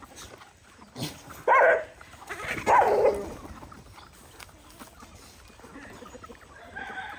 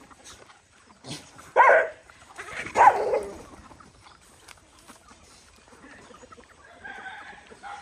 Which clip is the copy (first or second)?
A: second